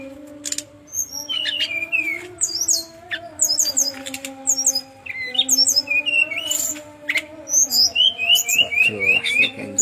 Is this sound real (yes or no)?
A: yes